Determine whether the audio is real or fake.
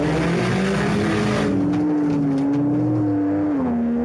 real